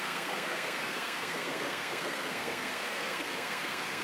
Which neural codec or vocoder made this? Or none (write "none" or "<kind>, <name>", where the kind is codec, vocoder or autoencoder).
codec, SNAC